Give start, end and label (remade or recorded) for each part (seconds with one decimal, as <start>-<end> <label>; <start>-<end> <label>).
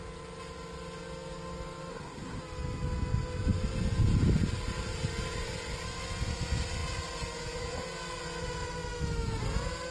0.0-1.9 recorded; 1.9-2.4 remade; 2.4-9.9 recorded